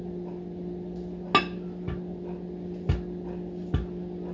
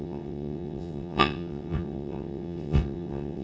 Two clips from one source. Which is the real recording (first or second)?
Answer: first